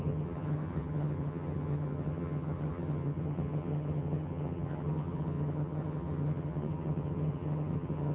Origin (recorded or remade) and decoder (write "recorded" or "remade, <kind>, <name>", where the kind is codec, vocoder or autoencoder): remade, vocoder, HiFi-GAN